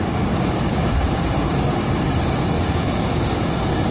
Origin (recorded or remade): remade